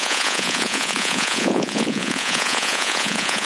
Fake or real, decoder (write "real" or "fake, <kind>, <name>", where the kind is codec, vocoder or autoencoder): fake, vocoder, Vocos